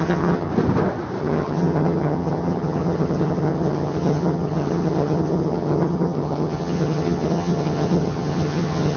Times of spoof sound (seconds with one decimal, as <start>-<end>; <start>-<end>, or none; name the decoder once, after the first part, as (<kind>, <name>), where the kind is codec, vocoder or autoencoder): 0.0-0.5 (vocoder, HiFi-GAN); 1.2-9.0